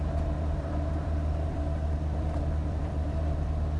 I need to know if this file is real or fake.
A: fake